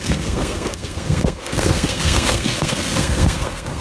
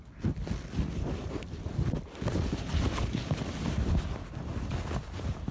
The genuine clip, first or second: second